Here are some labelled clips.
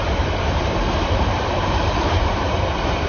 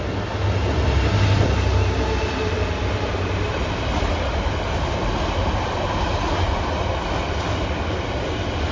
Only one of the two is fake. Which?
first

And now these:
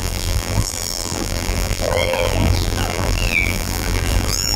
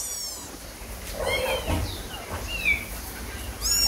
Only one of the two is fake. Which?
first